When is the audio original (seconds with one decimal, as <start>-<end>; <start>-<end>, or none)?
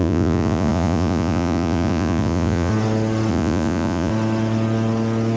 2.7-3.3; 4.1-5.4